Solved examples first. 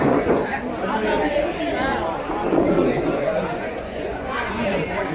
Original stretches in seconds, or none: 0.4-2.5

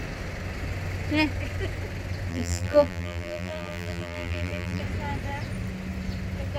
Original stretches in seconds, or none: 0.0-2.3; 4.8-6.6

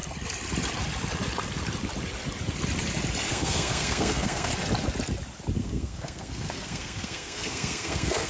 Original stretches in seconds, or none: 0.0-3.3; 4.5-5.6